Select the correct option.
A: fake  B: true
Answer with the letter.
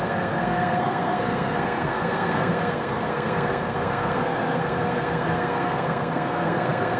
A